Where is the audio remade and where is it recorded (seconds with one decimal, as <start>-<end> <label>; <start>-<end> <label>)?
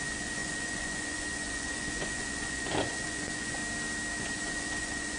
0.0-3.6 remade; 3.6-4.2 recorded; 4.2-5.2 remade